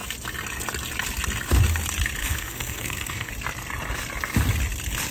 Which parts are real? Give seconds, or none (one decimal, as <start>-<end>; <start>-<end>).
0.0-2.2; 3.3-5.1